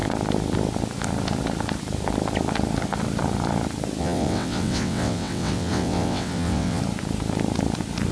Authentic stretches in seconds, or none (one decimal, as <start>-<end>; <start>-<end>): 0.0-4.0; 6.8-8.1